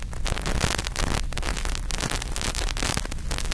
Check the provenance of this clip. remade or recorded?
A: remade